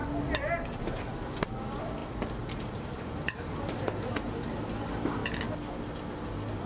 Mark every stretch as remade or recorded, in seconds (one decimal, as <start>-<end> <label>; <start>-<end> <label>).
0.0-6.7 recorded